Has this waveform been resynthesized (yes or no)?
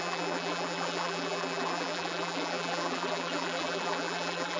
yes